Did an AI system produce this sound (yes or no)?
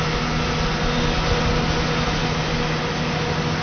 no